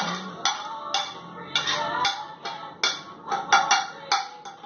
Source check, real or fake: real